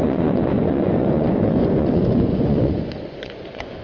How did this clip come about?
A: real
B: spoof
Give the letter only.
B